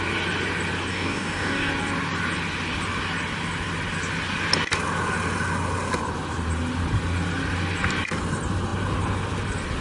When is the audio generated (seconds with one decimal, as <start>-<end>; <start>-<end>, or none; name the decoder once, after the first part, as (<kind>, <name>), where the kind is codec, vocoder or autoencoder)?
0.9-1.7 (codec, DAC)